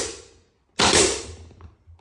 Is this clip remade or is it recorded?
recorded